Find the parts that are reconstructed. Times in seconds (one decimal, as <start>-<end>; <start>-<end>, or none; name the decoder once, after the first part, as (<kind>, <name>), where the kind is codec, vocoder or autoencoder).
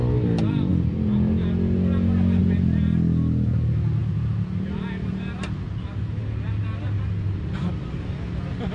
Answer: none